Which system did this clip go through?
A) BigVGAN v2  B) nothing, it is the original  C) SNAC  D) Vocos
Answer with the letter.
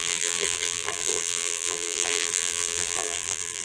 A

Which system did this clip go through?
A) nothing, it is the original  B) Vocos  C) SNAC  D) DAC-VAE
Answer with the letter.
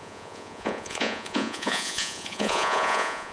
B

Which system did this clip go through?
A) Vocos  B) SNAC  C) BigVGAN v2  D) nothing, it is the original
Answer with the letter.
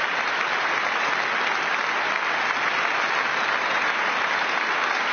D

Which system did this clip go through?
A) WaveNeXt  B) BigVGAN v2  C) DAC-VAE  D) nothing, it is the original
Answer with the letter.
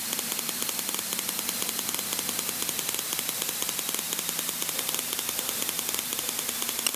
D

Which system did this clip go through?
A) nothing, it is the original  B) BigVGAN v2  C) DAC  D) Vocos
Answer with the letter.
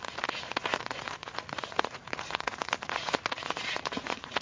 D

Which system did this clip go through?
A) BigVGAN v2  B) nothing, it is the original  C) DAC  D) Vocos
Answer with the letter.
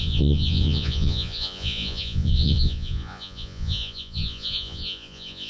D